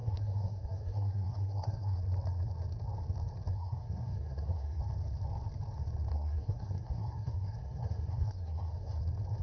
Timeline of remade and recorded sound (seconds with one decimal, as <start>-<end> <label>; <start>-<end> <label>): 0.0-2.0 remade; 2.0-3.5 recorded; 3.5-4.8 remade; 4.8-6.1 recorded; 6.1-9.0 remade; 9.0-9.4 recorded